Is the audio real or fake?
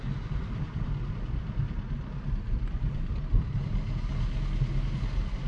real